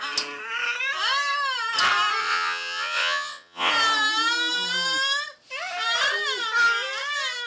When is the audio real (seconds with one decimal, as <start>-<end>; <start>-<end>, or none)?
0.0-2.2; 3.7-7.5